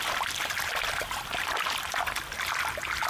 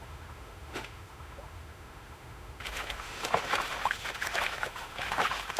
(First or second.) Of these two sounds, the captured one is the first